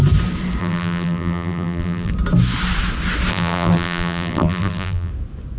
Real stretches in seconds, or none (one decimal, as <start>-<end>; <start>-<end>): 0.0-0.6; 2.1-3.3; 5.1-5.6